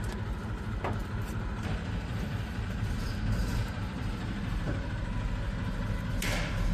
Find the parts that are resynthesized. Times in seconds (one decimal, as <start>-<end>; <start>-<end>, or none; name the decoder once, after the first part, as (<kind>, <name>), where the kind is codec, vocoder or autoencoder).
1.0-5.0 (vocoder, BigVGAN v2)